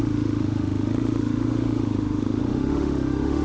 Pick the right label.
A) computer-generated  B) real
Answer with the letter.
A